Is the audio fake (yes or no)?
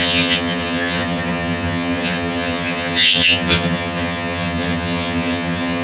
yes